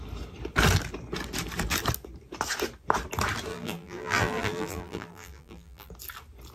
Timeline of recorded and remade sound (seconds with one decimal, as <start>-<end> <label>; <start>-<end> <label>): 0.0-3.5 recorded; 3.5-5.9 remade; 5.9-6.5 recorded